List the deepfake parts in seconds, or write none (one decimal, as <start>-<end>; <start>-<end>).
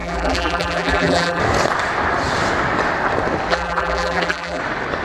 0.0-1.4; 3.5-4.6